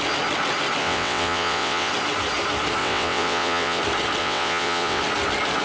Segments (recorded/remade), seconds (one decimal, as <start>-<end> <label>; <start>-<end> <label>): 0.0-0.8 recorded; 0.8-1.9 remade; 1.9-2.8 recorded; 2.8-3.8 remade; 3.8-4.2 recorded; 4.2-5.0 remade; 5.0-5.6 recorded